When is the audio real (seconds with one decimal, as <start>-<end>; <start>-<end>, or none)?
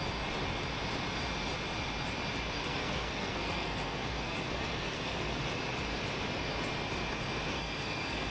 0.0-2.6; 5.4-7.5